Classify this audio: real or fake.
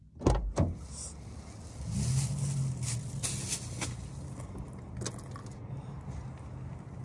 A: real